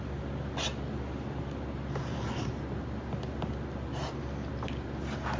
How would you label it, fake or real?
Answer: real